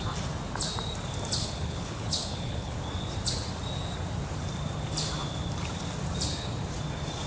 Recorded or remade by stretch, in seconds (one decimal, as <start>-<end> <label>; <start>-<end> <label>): 0.0-1.4 recorded; 1.4-2.8 remade; 2.8-7.3 recorded